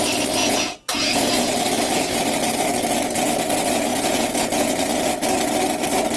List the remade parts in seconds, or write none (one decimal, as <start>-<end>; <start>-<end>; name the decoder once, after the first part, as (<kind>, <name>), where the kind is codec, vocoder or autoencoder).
0.4-1.5 (vocoder, Vocos); 3.9-4.7